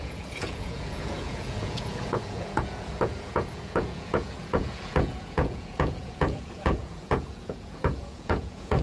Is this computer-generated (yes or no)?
yes